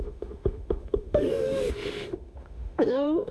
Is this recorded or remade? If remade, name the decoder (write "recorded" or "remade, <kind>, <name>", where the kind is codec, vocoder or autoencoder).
remade, autoencoder, DAC-VAE